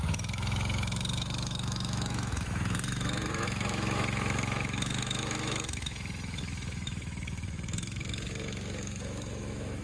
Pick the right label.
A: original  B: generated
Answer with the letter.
B